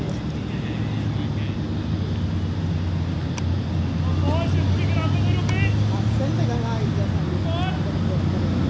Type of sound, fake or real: real